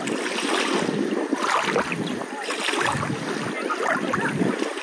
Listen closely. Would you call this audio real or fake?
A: real